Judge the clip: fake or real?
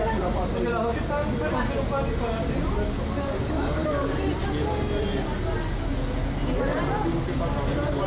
real